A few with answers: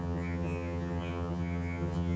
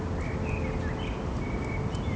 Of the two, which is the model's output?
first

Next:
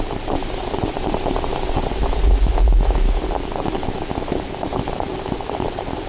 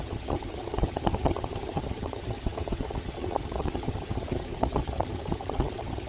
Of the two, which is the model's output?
second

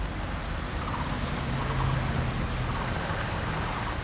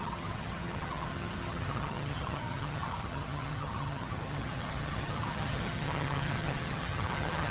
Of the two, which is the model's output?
second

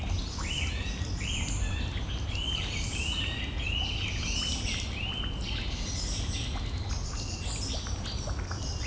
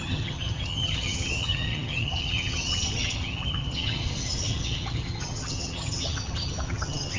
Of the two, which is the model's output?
second